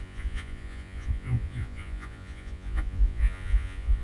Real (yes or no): no